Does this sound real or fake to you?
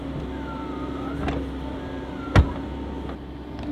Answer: real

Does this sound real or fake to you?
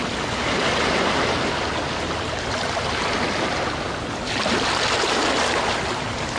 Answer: real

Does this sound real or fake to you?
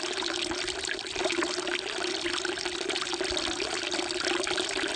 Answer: real